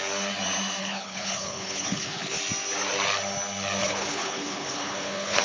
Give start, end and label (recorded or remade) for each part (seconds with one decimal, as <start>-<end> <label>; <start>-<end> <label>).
0.0-0.8 recorded; 0.8-2.4 remade; 2.4-3.8 recorded; 3.8-5.4 remade